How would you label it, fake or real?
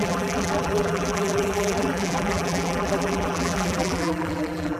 fake